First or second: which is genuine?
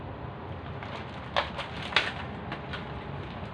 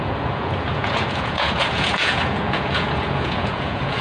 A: first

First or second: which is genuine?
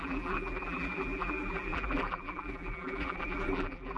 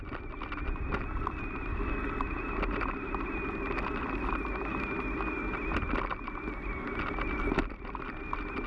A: second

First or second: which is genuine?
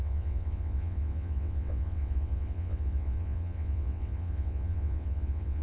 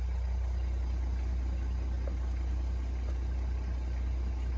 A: second